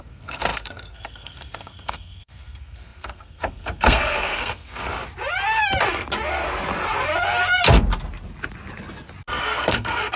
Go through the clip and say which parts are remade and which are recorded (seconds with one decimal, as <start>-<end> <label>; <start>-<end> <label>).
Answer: 0.0-4.9 remade; 4.9-9.4 recorded; 9.4-10.2 remade